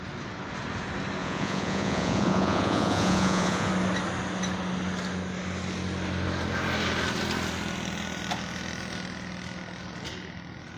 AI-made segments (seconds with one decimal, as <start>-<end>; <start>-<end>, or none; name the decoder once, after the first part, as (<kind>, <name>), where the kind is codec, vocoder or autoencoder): 1.2-3.7 (vocoder, Vocos)